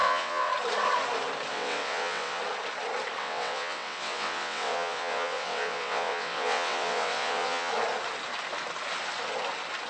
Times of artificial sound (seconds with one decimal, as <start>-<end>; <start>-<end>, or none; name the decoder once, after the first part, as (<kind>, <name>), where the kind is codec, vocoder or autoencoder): 0.0-0.5 (vocoder, WaveNeXt); 1.5-2.4; 3.2-7.7